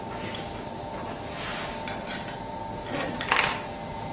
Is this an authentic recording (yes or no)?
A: yes